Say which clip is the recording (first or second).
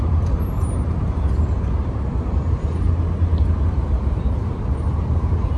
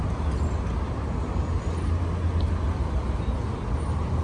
second